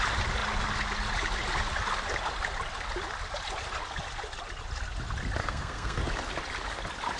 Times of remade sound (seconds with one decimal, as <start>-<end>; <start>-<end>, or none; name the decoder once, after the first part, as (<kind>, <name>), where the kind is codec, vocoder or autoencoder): 5.4-6.0 (codec, SNAC)

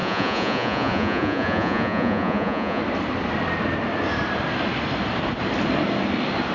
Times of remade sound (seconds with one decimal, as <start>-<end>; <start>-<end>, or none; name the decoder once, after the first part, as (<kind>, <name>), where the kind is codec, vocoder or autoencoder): 0.0-2.8 (vocoder, Vocos)

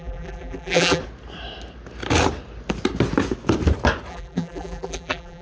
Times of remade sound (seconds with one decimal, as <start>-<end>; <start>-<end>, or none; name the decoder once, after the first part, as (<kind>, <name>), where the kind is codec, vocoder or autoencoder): 0.0-1.0 (vocoder, BigVGAN v2); 4.1-5.4

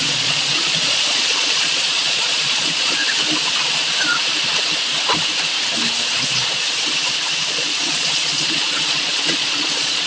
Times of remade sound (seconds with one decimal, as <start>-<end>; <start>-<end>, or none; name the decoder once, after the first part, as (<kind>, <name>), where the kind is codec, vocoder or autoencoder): 0.0-3.0 (vocoder, Vocos); 7.5-10.1